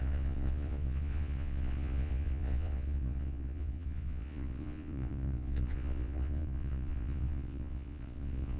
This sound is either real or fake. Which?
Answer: fake